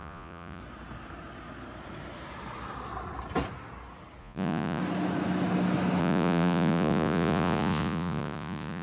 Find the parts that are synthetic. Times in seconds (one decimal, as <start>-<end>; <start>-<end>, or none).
0.0-0.6; 4.2-4.8; 6.0-8.8